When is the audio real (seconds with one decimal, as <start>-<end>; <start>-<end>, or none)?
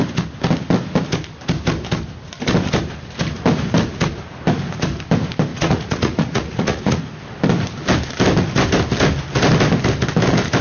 0.0-5.5; 7.0-10.6